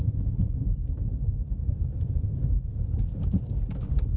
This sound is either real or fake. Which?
real